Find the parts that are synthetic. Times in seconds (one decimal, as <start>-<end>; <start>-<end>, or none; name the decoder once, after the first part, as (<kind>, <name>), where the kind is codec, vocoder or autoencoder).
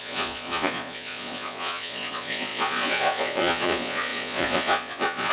0.0-5.3 (vocoder, Vocos)